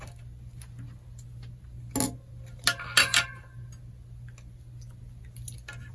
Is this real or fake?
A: real